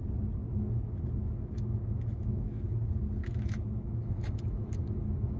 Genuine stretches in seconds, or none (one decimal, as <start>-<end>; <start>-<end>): 0.0-0.5; 2.8-3.2